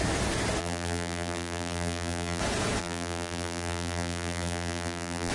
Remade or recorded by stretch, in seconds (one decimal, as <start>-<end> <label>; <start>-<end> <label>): 0.0-0.6 recorded; 0.6-2.4 remade; 2.4-2.8 recorded; 2.8-5.3 remade

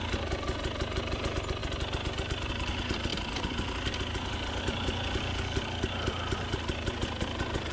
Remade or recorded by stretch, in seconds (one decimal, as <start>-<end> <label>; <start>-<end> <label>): 0.0-7.7 recorded

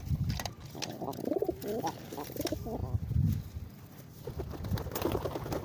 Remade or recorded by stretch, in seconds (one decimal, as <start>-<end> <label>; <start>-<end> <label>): 0.0-5.6 recorded

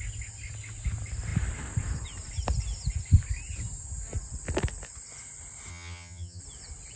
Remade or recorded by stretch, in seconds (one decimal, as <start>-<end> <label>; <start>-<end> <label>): 0.0-5.7 recorded; 5.7-6.4 remade; 6.4-7.0 recorded

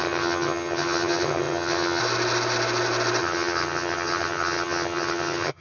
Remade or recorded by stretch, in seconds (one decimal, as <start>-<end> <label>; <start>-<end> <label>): 0.0-2.0 remade; 2.0-3.2 recorded; 3.2-5.6 remade

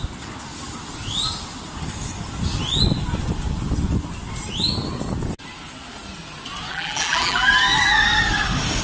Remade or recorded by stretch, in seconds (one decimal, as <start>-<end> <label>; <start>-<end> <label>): 0.0-6.7 recorded; 6.7-7.5 remade; 7.5-8.8 recorded